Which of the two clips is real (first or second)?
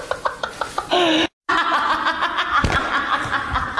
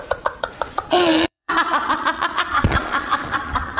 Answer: first